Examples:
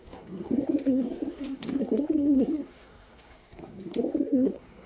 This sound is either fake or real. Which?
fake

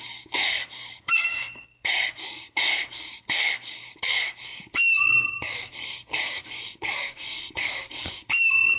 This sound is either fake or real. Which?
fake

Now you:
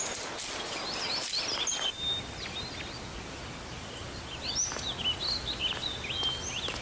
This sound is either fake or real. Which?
real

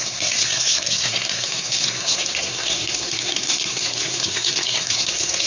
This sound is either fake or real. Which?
fake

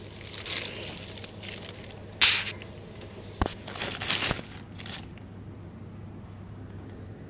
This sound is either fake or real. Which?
real